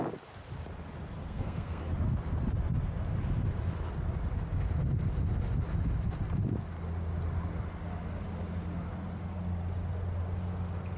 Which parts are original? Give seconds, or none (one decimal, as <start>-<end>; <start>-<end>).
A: 0.0-1.2; 1.8-11.0

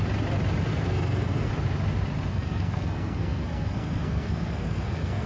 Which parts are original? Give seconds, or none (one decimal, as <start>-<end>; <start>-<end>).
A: 0.0-0.7; 1.5-2.3